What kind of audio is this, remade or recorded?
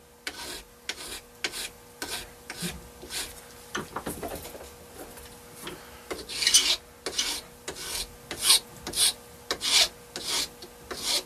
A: recorded